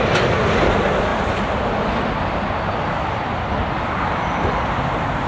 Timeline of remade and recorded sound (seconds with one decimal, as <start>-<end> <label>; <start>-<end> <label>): 0.0-5.3 recorded